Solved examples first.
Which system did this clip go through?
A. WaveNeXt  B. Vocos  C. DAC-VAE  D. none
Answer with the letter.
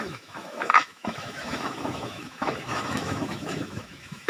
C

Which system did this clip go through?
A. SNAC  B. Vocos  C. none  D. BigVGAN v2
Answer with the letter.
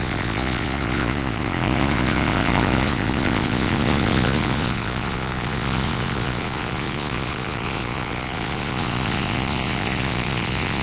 B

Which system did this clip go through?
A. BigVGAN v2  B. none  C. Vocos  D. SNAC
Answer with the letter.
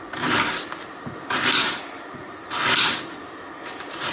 B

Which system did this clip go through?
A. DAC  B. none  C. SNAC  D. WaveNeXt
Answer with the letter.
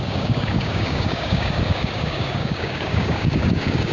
A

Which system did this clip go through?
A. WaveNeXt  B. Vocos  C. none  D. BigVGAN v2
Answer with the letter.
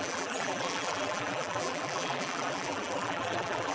D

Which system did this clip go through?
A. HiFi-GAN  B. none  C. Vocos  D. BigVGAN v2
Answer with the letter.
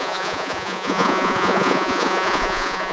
C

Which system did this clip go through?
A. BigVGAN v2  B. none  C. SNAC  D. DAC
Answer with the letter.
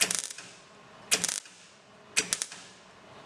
B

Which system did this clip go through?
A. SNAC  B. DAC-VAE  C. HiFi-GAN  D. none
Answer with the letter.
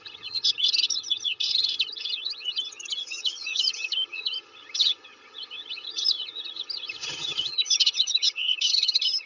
C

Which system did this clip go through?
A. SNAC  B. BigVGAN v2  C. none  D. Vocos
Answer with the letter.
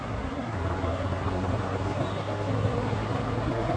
A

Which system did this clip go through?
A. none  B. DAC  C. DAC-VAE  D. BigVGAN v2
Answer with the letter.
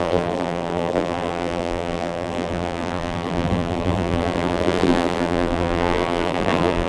D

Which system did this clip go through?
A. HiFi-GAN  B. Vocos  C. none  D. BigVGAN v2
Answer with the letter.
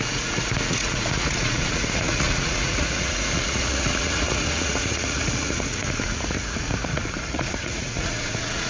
B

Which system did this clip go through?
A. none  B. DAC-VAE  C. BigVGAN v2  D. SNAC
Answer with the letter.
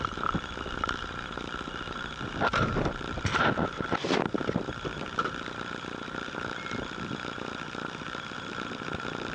C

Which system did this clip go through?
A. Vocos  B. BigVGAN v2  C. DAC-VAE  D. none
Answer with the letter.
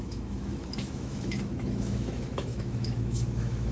C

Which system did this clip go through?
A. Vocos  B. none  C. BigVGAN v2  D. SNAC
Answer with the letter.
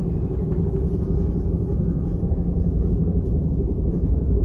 C